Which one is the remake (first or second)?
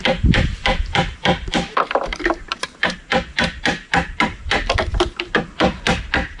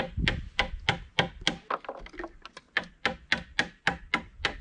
first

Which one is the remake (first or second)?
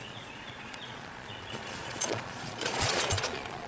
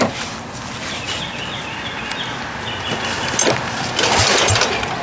first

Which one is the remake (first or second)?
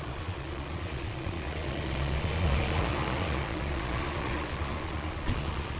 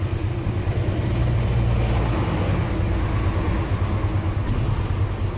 first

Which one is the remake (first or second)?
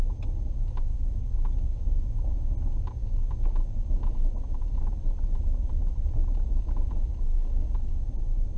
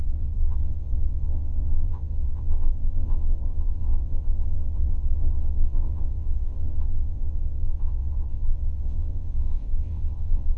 second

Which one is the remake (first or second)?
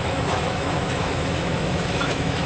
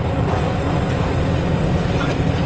first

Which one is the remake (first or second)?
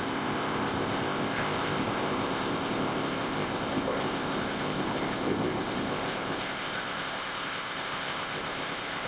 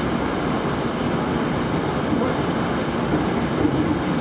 first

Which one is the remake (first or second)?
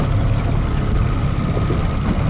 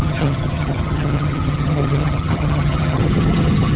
second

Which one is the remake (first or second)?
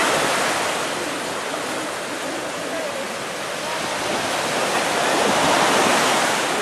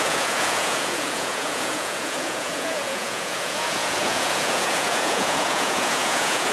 second